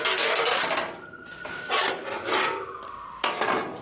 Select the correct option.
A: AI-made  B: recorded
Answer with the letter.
B